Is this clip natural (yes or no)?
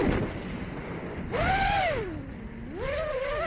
yes